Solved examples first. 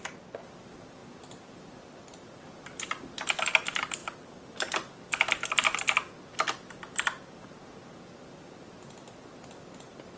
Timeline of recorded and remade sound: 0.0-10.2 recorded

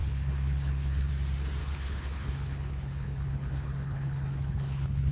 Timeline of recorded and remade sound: 0.0-1.1 remade; 1.1-1.6 recorded; 1.6-5.1 remade

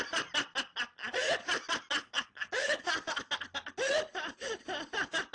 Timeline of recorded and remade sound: 0.0-2.0 recorded; 2.0-2.9 remade; 2.9-5.3 recorded

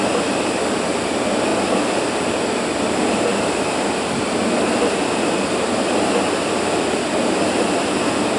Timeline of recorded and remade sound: 0.0-8.4 recorded